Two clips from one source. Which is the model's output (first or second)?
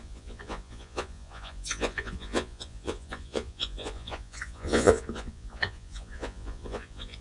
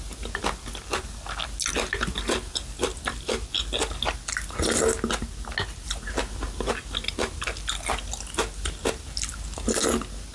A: first